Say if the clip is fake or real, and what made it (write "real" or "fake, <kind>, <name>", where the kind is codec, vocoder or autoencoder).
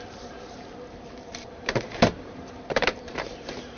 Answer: fake, vocoder, BigVGAN v2